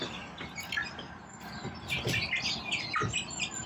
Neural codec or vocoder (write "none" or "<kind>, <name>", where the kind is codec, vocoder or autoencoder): none